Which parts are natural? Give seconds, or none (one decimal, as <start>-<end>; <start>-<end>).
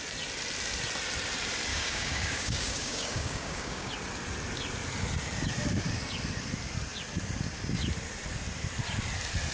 0.0-1.7; 3.9-9.5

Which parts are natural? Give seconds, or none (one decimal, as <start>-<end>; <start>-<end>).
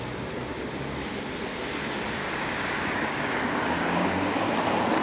0.0-2.2; 4.4-5.0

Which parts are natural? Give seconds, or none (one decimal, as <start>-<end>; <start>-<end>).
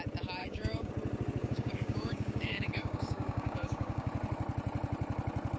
0.0-0.4; 0.9-1.4; 4.1-5.6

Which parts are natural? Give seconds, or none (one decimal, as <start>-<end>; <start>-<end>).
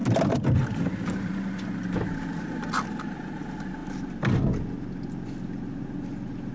0.0-6.5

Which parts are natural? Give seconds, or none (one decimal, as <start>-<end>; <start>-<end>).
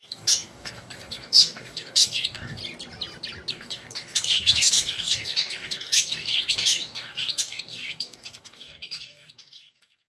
2.6-3.5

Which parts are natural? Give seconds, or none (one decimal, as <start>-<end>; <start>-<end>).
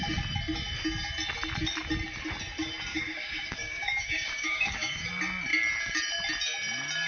0.0-2.9; 5.1-7.1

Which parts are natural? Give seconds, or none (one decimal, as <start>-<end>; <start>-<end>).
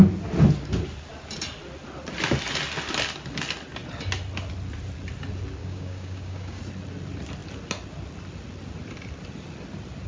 0.0-5.6; 6.6-10.1